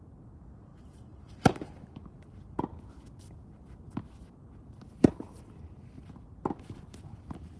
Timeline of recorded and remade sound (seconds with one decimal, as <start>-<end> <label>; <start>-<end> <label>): 0.0-0.7 recorded; 0.7-1.9 remade; 1.9-7.6 recorded